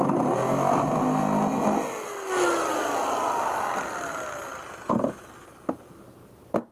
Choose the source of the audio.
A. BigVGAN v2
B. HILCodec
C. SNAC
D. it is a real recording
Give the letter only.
D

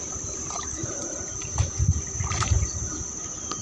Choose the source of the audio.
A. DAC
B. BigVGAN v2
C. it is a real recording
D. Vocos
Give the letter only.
B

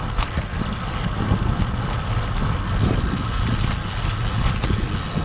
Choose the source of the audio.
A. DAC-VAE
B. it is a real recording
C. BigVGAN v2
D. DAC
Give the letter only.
B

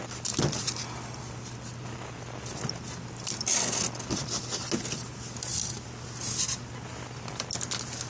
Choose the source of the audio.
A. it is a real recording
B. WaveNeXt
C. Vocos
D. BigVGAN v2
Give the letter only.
A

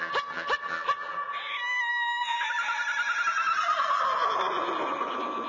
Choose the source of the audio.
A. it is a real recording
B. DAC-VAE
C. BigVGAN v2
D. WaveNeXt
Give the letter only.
A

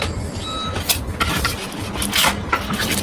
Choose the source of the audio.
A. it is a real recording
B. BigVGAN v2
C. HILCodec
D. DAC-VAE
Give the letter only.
A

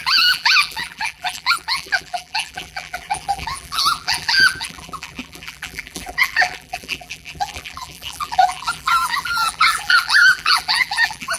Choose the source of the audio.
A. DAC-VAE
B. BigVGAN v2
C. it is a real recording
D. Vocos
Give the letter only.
B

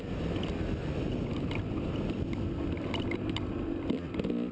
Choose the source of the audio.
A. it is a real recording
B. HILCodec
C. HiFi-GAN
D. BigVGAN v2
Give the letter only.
A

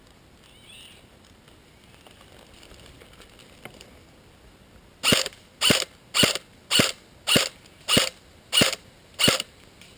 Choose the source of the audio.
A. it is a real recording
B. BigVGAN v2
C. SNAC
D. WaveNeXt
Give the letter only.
A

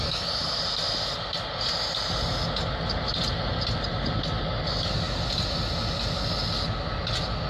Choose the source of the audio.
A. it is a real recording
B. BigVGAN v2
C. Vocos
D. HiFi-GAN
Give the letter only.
A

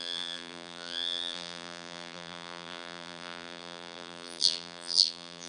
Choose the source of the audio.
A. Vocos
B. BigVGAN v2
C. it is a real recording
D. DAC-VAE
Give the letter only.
B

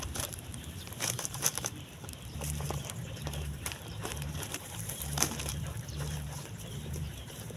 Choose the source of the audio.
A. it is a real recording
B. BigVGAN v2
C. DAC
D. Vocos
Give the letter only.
B